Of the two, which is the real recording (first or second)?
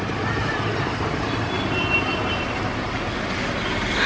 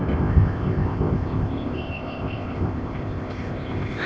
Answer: first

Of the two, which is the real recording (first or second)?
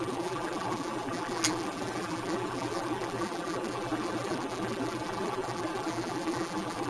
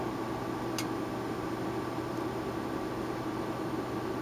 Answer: second